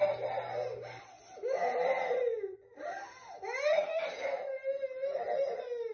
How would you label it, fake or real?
real